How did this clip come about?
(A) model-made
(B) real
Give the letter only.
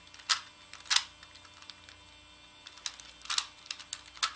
B